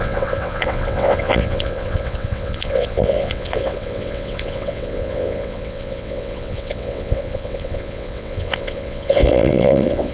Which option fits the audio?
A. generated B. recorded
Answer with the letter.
A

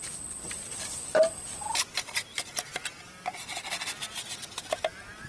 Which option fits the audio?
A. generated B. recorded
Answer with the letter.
B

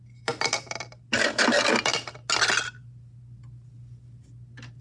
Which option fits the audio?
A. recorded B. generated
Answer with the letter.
A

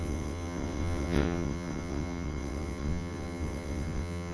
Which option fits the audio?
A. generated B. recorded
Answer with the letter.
A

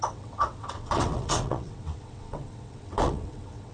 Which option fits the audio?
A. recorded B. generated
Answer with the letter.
B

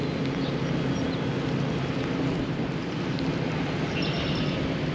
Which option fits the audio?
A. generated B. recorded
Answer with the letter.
B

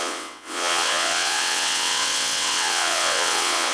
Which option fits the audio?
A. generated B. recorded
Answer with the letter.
A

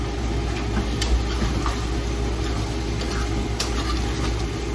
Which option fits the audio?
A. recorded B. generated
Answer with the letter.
A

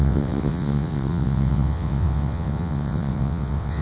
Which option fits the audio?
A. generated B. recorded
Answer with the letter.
A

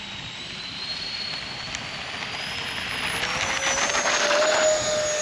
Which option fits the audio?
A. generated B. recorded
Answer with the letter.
B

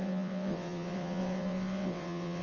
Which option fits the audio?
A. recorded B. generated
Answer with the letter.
B